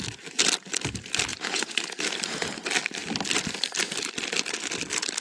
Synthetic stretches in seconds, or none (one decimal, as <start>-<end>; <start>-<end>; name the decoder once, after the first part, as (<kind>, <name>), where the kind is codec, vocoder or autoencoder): 1.3-2.0 (vocoder, Vocos)